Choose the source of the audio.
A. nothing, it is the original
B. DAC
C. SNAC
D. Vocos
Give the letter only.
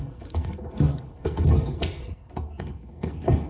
C